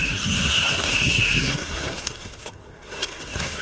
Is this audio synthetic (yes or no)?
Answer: yes